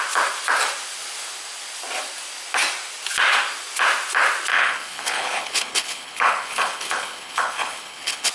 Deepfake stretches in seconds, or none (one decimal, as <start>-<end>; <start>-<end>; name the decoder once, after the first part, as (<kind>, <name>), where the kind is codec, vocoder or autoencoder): 4.5-8.3 (codec, HILCodec)